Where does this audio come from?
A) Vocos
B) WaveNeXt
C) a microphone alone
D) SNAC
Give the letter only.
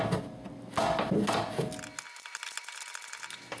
C